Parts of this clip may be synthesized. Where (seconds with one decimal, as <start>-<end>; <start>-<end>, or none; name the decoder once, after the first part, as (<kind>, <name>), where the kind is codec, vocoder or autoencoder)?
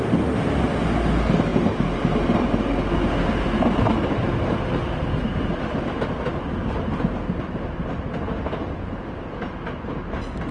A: none